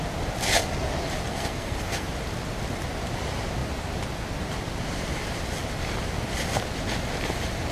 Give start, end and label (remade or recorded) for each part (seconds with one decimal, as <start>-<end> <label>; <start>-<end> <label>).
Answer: 0.0-1.3 recorded; 1.3-2.1 remade; 2.1-7.7 recorded